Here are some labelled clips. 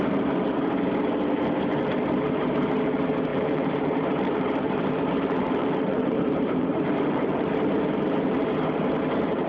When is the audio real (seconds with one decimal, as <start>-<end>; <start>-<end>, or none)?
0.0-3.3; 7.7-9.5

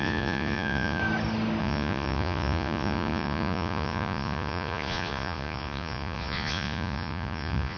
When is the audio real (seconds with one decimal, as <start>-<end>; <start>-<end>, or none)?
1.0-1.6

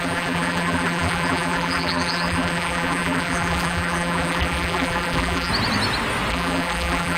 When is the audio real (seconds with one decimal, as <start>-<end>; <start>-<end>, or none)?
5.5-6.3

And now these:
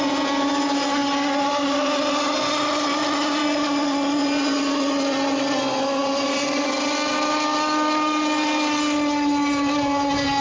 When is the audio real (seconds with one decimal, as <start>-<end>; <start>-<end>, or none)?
0.0-10.4

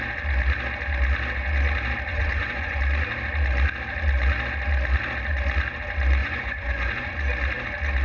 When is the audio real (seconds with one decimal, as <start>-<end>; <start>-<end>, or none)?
0.0-2.1; 2.8-6.2; 7.1-8.0